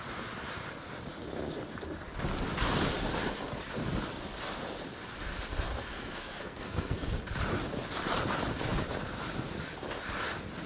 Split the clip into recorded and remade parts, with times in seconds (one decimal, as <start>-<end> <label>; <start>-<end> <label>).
0.0-5.9 recorded; 5.9-7.1 remade; 7.1-10.7 recorded